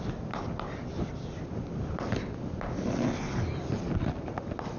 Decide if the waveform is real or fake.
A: real